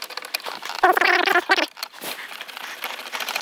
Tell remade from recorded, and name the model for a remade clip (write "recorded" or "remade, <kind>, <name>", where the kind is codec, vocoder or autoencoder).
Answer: recorded